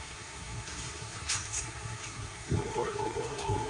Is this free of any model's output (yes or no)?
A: no